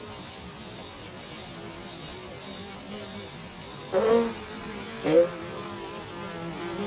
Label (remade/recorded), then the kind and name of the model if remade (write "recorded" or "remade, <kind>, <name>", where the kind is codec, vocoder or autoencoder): recorded